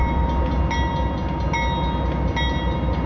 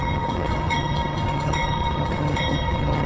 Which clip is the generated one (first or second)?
second